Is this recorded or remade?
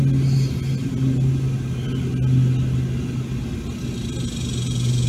recorded